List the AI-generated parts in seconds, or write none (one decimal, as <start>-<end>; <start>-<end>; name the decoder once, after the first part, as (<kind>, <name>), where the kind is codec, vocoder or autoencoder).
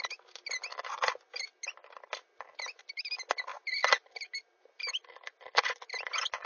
none